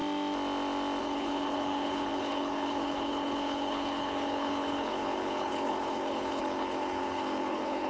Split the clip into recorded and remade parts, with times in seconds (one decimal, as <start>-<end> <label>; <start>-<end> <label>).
0.0-1.0 recorded; 1.0-7.9 remade